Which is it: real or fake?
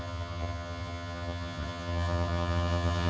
fake